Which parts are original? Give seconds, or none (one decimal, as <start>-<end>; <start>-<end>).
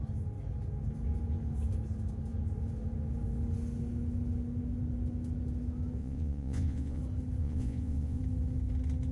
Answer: 0.0-6.0; 7.0-7.4; 8.2-9.1